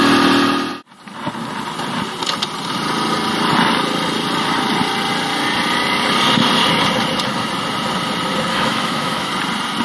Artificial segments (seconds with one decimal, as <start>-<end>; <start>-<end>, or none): 8.5-9.3

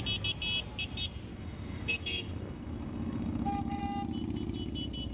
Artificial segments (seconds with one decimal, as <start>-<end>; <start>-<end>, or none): 1.3-3.8

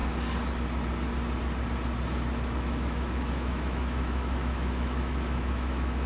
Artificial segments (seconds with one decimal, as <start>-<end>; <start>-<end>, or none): 2.6-6.1

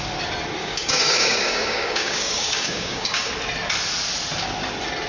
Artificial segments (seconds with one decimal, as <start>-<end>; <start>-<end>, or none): 0.6-3.3

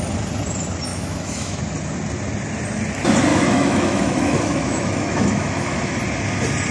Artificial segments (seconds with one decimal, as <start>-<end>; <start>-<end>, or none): 0.9-1.6; 3.3-6.0

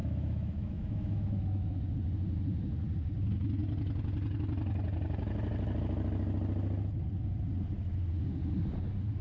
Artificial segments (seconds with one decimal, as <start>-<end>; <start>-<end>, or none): 0.0-1.8